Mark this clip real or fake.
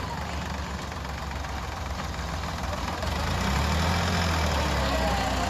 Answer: real